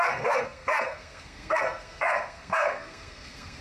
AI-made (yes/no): yes